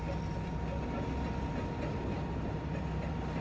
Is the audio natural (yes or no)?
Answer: yes